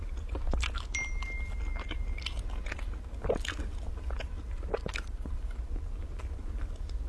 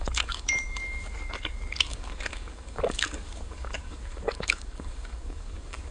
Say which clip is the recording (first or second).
first